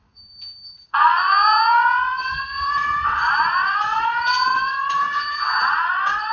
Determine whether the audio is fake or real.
fake